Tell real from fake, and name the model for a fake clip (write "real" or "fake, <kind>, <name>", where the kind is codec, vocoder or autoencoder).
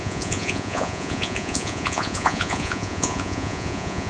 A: fake, vocoder, Vocos